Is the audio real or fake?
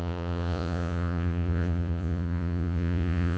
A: fake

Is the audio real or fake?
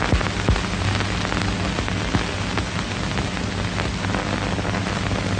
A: real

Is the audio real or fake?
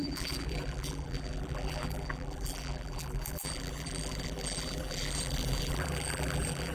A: fake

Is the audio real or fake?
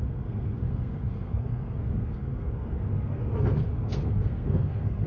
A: fake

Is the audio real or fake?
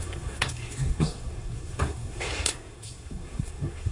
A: fake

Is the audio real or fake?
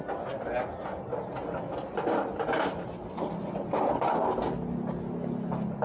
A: real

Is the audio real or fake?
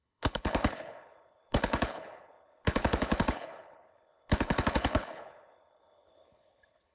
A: fake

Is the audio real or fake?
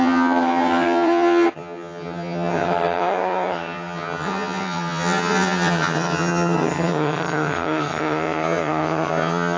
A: fake